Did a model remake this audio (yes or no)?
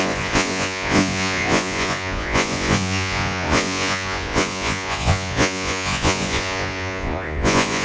yes